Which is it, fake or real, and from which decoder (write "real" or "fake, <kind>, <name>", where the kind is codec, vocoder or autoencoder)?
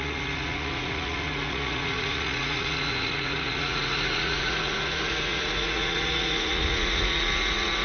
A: fake, vocoder, Vocos